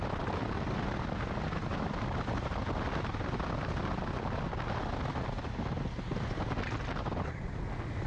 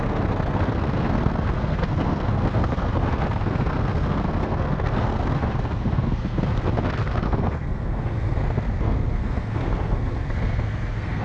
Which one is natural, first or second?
first